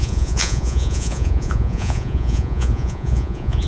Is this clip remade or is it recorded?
remade